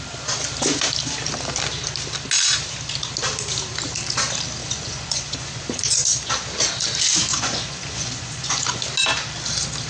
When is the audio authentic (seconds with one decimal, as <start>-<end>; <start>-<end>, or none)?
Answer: 0.0-4.6; 5.8-7.3; 8.8-9.9